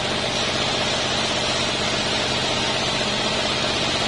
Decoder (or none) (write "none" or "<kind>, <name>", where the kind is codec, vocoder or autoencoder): none